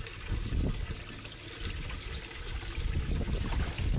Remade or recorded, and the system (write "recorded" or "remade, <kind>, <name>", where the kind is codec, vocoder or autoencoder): recorded